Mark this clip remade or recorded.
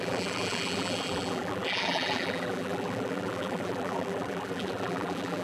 remade